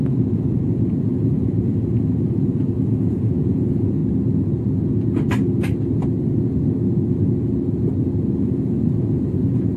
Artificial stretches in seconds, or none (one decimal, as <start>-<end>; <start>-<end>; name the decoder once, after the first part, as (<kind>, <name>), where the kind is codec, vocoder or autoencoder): 0.0-4.0 (vocoder, Vocos); 8.4-9.8